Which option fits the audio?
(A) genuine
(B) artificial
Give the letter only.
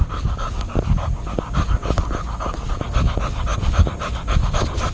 A